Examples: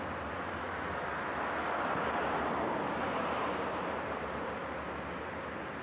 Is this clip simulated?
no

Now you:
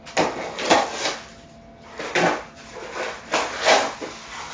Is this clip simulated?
no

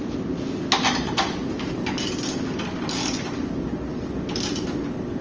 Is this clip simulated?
no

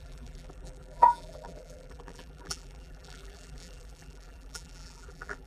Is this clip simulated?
yes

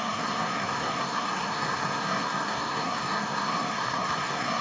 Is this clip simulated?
yes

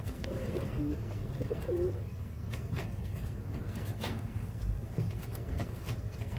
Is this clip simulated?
yes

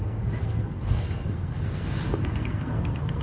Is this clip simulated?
yes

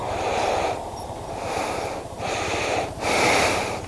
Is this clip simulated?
no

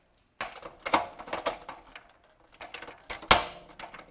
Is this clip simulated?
no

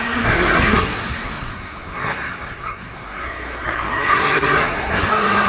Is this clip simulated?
yes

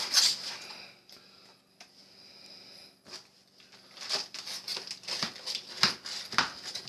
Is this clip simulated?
no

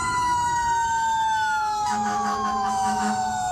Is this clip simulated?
yes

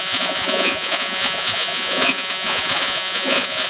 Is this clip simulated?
yes